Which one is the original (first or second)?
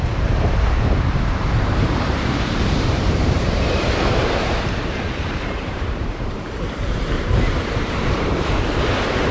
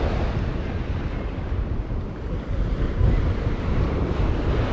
second